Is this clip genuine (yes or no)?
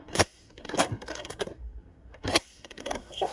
no